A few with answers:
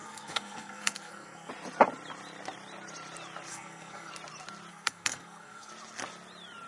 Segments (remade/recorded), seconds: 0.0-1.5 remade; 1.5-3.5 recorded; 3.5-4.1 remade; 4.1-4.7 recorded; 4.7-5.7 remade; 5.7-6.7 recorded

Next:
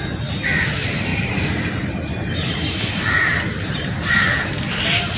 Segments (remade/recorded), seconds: 0.0-1.1 recorded; 1.1-4.2 remade; 4.2-5.2 recorded

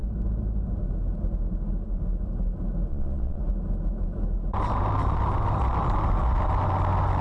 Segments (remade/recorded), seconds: 0.0-2.9 recorded; 2.9-3.4 remade; 3.4-7.2 recorded

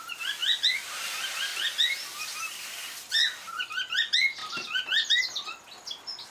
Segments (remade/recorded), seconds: 0.0-6.3 recorded

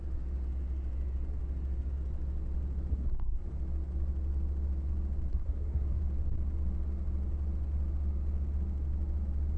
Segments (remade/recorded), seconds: 0.0-2.9 recorded; 2.9-3.5 remade; 3.5-5.3 recorded; 5.3-6.0 remade; 6.0-9.6 recorded

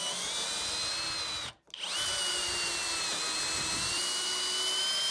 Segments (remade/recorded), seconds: 0.0-5.1 recorded